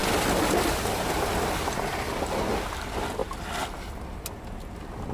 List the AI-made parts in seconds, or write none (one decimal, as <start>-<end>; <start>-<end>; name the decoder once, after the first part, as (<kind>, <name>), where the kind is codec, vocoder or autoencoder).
none